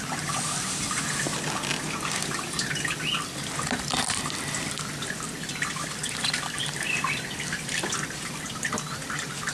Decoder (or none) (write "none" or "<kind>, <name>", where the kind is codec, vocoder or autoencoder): none